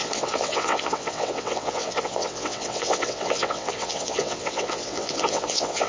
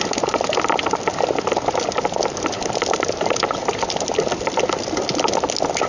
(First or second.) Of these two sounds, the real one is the second